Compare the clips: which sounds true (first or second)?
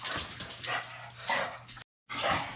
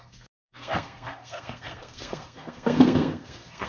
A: first